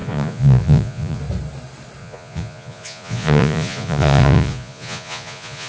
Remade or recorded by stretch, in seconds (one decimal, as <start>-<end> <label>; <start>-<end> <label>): 0.0-1.2 remade; 1.2-2.0 recorded; 2.0-5.7 remade